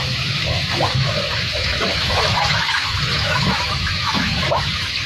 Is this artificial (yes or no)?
yes